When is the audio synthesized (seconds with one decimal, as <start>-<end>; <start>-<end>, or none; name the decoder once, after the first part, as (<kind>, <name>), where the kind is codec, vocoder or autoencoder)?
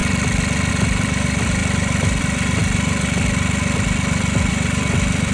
0.7-2.6 (vocoder, BigVGAN v2); 4.5-5.3